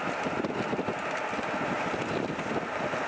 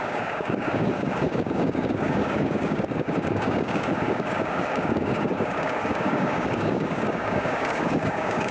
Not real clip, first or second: second